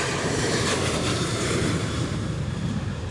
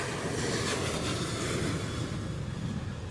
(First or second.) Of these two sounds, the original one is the second